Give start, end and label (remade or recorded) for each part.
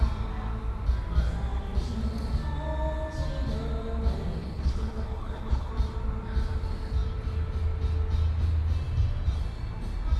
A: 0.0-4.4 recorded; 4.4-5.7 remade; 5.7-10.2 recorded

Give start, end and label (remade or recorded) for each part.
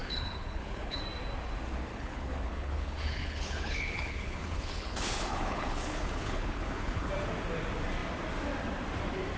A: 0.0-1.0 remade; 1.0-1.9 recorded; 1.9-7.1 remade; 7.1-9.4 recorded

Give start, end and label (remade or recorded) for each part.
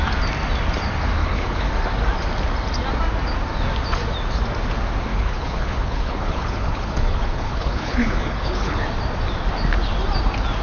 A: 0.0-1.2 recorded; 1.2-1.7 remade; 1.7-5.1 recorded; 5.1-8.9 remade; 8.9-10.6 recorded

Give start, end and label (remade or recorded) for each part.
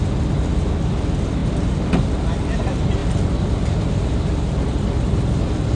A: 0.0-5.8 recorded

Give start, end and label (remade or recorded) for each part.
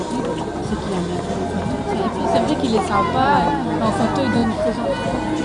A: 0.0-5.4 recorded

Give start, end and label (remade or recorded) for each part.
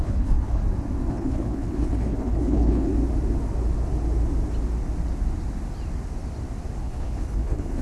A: 0.0-0.6 remade; 0.6-1.1 recorded; 1.1-2.9 remade; 2.9-6.8 recorded; 6.8-7.8 remade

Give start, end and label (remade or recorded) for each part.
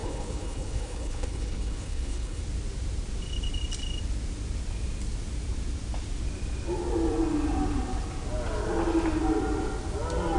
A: 0.0-2.4 remade; 2.4-10.4 recorded